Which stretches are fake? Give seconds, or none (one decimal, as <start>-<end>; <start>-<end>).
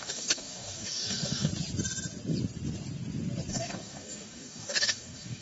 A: 0.0-1.5; 3.5-5.4